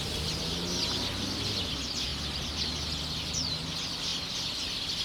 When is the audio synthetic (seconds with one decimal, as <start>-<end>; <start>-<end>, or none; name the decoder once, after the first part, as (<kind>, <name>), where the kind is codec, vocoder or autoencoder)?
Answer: none